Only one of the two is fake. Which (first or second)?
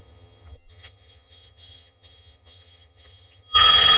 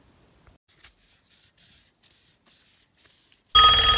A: first